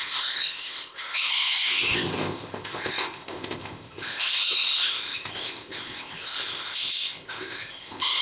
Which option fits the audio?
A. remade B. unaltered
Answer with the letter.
A